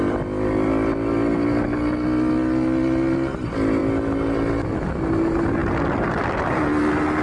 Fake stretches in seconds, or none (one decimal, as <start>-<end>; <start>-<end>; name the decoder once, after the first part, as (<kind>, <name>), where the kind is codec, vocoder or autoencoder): none